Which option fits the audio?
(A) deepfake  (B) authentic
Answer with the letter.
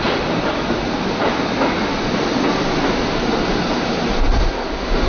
B